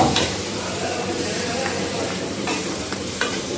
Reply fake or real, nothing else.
fake